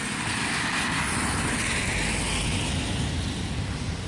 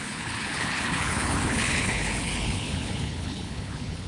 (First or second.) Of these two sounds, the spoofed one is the second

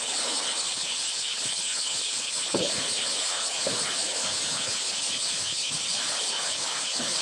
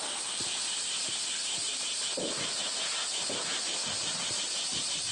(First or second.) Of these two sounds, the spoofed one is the first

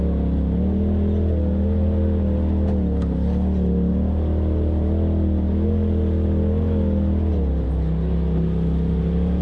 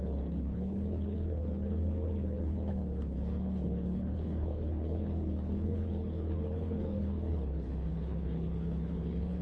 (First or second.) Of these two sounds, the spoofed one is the second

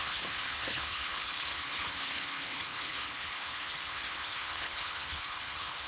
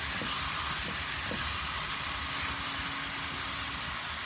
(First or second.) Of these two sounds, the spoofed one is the first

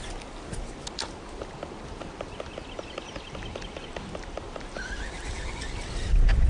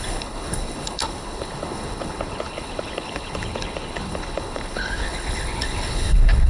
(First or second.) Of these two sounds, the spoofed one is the second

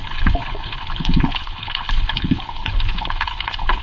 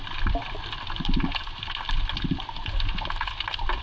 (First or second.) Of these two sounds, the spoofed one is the first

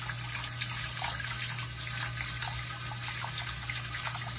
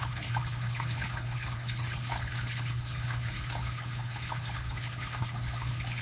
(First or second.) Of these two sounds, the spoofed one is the second